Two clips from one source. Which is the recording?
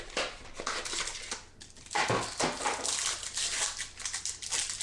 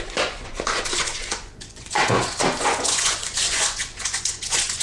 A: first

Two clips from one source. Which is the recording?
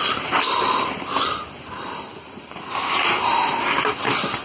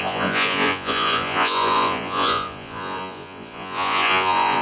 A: first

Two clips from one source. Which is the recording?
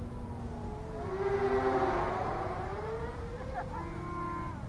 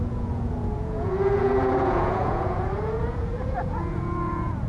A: first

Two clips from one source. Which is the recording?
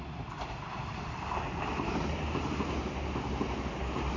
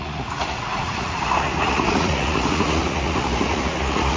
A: first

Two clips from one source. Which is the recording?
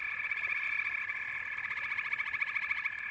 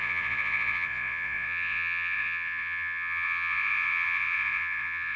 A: first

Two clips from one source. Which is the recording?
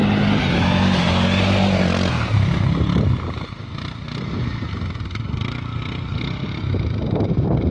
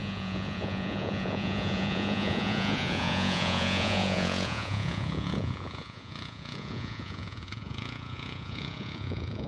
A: first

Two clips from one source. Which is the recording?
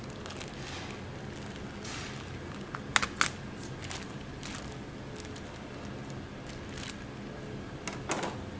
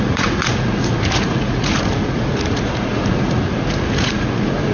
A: first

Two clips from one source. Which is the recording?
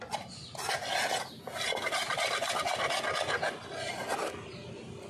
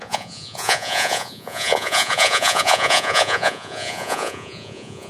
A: first